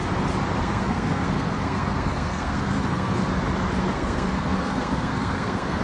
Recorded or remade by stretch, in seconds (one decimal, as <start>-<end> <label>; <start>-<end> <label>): 0.0-0.6 recorded; 0.6-3.2 remade; 3.2-3.8 recorded; 3.8-5.8 remade